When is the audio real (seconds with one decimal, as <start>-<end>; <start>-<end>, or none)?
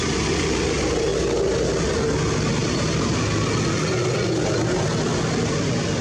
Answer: 0.0-6.0